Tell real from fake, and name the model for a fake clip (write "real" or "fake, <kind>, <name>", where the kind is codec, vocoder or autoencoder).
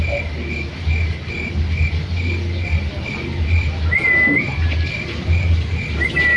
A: real